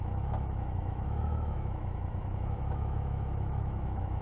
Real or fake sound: fake